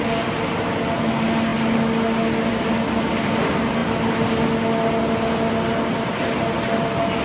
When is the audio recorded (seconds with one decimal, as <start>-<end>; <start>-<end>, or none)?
0.0-7.2